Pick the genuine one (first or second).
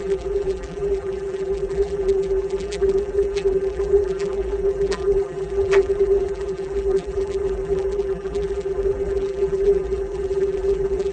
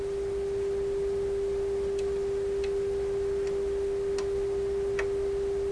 second